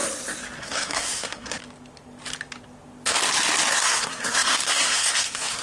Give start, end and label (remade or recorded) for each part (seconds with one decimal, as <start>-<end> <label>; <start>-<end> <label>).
0.0-0.6 recorded; 0.6-1.6 remade; 1.6-3.7 recorded; 3.7-5.6 remade